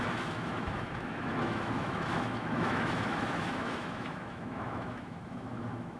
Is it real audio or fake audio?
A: fake